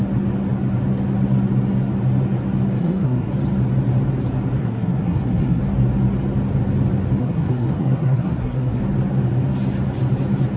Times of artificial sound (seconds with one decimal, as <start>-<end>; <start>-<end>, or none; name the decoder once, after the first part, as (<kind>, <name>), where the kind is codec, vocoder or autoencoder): 2.8-3.3 (codec, SNAC); 4.6-5.6; 7.2-8.8